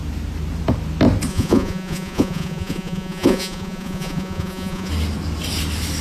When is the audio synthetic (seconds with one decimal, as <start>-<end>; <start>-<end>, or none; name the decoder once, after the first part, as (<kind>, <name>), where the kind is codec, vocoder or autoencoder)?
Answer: 1.3-4.9 (vocoder, Vocos)